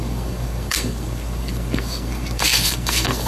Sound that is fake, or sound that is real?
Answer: fake